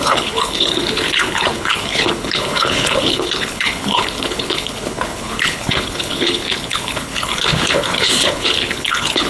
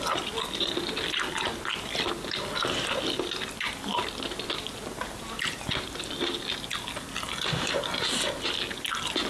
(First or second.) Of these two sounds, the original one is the second